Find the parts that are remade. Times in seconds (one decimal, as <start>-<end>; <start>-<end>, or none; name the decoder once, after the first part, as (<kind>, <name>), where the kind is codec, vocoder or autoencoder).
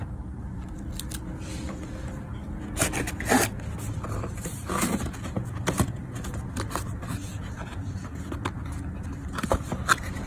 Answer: 4.9-6.0 (vocoder, Vocos); 7.3-7.8